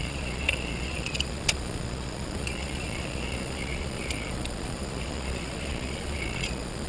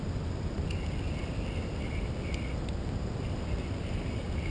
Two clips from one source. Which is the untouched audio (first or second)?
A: second